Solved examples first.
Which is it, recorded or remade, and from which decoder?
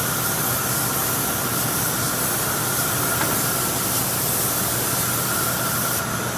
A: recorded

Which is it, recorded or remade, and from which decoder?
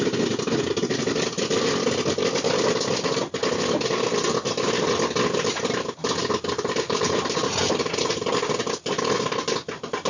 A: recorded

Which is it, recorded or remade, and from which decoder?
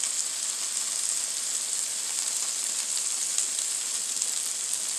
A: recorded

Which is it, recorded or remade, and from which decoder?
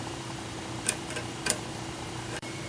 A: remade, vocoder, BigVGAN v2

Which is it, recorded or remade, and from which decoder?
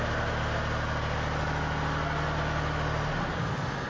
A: recorded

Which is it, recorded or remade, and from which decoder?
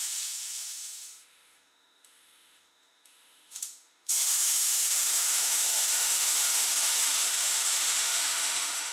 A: remade, autoencoder, DAC-VAE